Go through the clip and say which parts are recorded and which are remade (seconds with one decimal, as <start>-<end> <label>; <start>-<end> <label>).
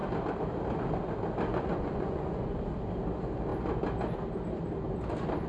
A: 0.0-1.5 recorded; 1.5-2.6 remade; 2.6-5.5 recorded